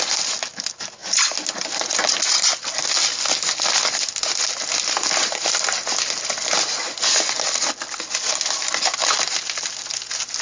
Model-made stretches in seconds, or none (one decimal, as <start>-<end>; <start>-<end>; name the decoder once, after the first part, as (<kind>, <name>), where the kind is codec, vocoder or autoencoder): none